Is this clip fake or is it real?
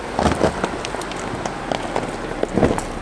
real